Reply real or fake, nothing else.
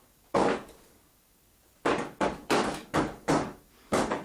fake